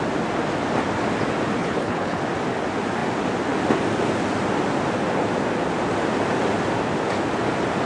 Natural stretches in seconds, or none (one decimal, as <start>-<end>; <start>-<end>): 0.0-1.6; 2.2-7.9